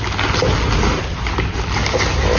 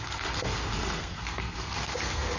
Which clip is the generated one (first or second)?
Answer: second